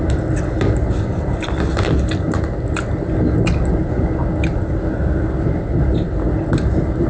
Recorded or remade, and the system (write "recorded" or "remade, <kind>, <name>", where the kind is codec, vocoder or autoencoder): recorded